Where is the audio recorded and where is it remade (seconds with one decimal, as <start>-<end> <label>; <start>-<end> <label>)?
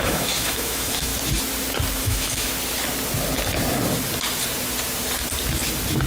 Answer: 0.0-1.1 remade; 1.1-2.0 recorded; 2.0-2.5 remade; 2.5-6.1 recorded